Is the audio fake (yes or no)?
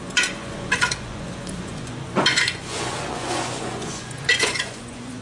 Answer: yes